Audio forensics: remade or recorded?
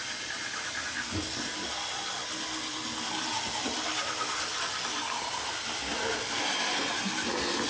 recorded